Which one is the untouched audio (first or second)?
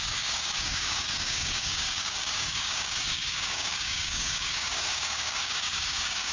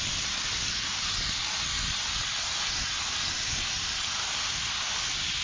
second